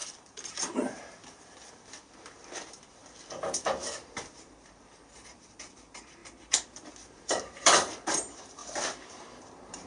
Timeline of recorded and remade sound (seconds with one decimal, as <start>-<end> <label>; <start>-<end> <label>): 0.0-9.9 remade